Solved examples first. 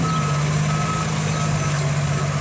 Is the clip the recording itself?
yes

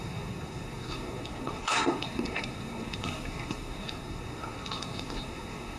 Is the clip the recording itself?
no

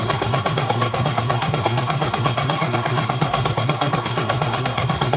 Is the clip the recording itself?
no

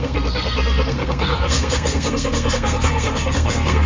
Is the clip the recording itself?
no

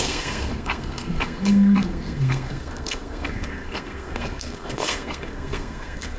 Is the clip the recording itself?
no